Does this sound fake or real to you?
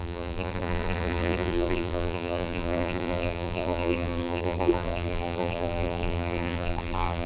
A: fake